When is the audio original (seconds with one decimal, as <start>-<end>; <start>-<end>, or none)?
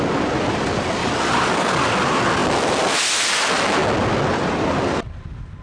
0.0-1.0; 1.9-5.6